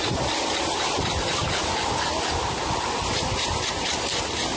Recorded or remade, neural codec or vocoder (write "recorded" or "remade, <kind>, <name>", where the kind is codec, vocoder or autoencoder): recorded